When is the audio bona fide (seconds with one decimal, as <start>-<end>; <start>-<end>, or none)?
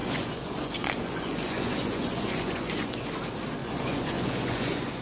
3.0-3.6